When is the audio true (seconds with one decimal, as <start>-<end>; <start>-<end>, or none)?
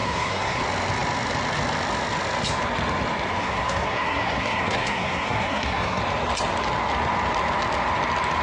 0.6-3.4; 6.0-8.4